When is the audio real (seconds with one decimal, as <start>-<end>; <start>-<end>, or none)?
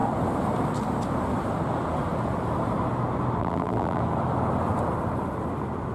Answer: 0.0-3.4; 4.0-5.9